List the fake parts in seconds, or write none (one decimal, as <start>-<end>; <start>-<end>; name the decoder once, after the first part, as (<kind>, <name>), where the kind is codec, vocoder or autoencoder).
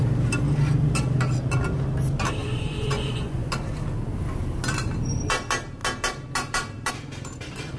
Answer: 2.4-3.5 (vocoder, Vocos)